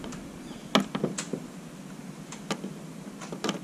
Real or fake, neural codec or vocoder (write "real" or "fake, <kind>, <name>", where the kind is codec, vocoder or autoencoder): real